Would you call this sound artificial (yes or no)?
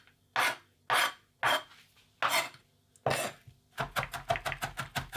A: no